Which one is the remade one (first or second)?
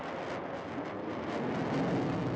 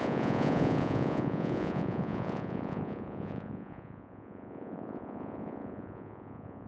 second